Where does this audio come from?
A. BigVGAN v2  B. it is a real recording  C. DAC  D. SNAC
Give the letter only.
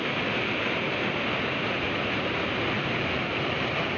A